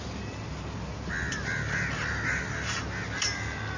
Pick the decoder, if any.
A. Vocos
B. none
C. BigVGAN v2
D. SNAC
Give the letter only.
B